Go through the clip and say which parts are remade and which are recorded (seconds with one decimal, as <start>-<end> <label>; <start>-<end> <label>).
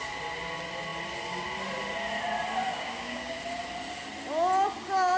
0.0-2.7 recorded; 2.7-3.4 remade; 3.4-5.2 recorded